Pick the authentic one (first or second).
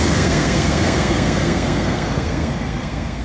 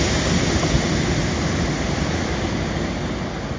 second